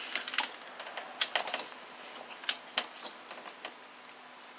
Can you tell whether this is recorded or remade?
recorded